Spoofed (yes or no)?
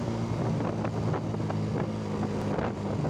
no